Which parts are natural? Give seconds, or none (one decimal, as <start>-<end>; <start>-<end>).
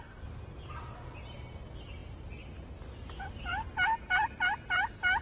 0.0-5.2